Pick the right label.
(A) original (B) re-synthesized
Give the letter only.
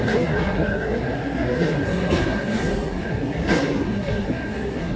B